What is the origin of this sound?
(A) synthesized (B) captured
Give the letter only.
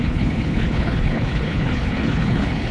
A